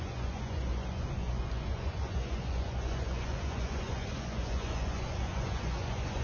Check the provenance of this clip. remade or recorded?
remade